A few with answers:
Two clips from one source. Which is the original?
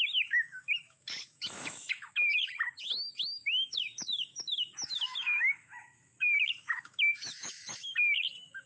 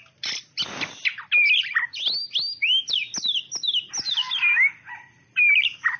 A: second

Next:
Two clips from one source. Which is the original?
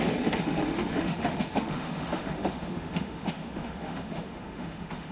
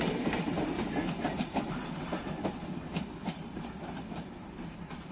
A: second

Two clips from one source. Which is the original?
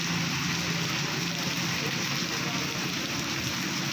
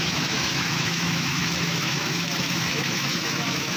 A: first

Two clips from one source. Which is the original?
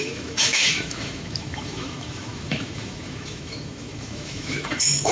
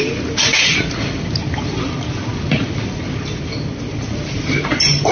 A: second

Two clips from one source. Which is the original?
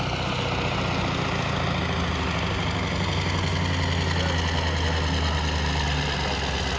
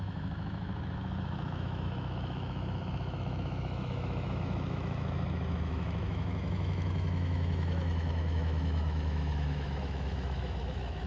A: first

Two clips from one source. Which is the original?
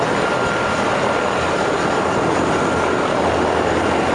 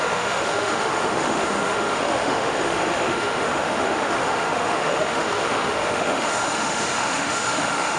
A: first